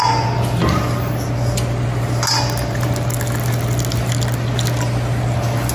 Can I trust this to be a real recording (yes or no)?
yes